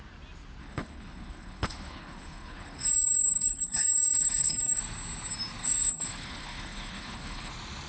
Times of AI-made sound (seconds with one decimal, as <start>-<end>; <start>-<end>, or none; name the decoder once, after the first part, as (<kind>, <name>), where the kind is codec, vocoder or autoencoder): 0.6-4.8 (codec, HILCodec); 5.6-7.5